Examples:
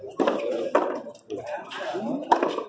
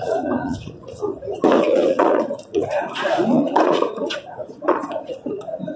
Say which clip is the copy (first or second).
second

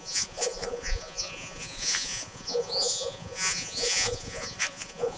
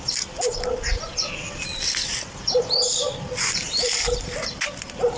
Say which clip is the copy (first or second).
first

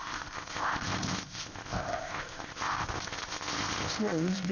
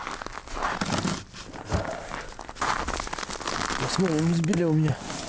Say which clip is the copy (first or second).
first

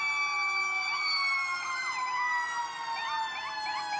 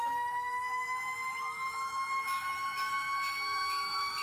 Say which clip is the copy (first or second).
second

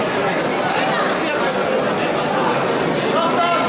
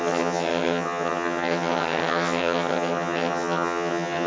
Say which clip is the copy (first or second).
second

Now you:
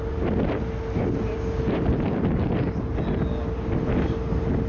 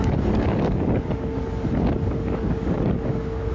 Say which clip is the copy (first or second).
second